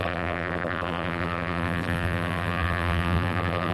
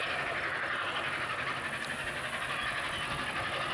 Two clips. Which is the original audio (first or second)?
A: second